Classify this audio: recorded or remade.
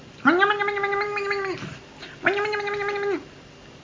recorded